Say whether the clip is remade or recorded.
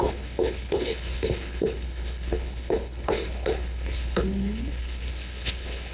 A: remade